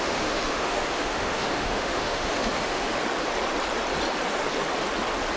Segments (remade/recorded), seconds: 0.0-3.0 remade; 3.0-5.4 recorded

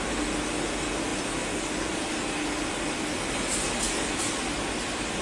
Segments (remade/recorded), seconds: 0.0-5.2 recorded

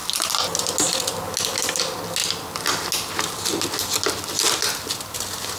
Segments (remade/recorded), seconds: 0.0-5.6 recorded

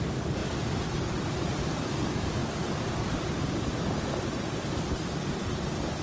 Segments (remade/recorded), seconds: 0.0-6.0 recorded

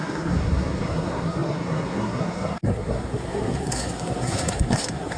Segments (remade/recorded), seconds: 0.0-5.2 remade

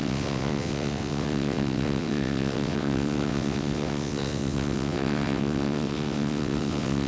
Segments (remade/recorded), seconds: 0.0-7.1 remade